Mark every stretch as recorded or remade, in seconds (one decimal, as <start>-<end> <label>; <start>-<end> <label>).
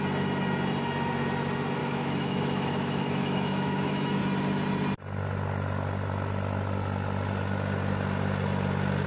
0.0-1.8 recorded; 1.8-4.2 remade; 4.2-9.1 recorded